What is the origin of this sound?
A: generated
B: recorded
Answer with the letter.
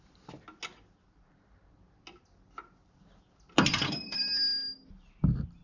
B